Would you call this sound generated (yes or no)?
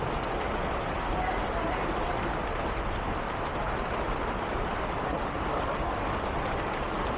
no